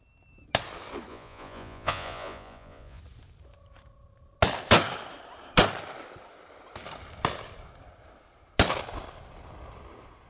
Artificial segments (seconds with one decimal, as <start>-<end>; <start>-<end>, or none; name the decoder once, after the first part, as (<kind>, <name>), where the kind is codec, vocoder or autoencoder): 1.1-3.0 (vocoder, Vocos)